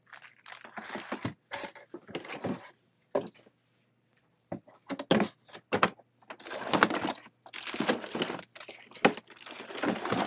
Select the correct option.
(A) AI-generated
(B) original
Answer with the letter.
B